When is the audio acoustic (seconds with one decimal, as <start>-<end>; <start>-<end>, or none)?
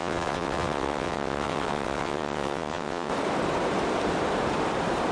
3.1-5.1